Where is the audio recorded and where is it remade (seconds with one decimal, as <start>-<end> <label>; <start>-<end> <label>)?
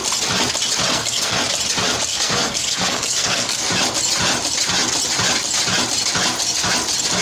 0.0-0.9 recorded; 0.9-1.4 remade; 1.4-2.1 recorded; 2.1-3.6 remade; 3.6-7.2 recorded